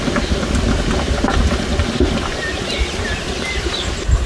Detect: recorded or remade recorded